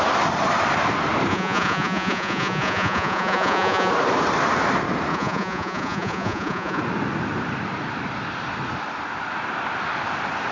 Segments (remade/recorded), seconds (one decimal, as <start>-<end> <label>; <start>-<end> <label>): 0.0-1.3 recorded; 1.3-3.9 remade; 3.9-5.1 recorded; 5.1-6.8 remade; 6.8-10.5 recorded